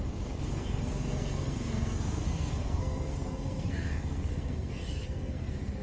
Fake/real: fake